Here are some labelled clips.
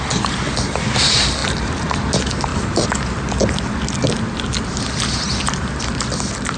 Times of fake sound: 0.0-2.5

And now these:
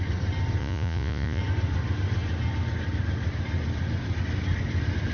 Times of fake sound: 0.6-1.4